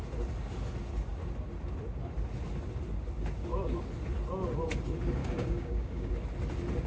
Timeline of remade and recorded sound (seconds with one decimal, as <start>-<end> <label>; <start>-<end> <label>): 0.0-5.2 recorded; 5.2-6.1 remade; 6.1-6.9 recorded